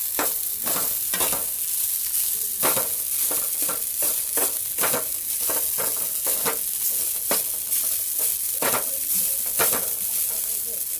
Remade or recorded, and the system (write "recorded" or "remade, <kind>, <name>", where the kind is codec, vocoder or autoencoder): recorded